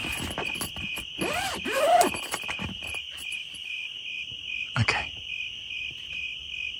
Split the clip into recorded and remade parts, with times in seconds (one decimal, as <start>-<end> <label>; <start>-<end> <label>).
0.0-6.8 recorded